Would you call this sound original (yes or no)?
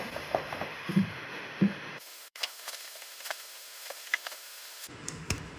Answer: no